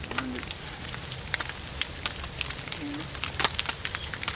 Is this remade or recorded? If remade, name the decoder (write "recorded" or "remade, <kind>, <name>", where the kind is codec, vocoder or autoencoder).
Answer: recorded